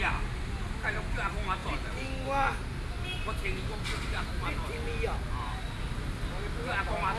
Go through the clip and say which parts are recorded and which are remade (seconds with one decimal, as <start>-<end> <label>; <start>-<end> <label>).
0.0-7.2 recorded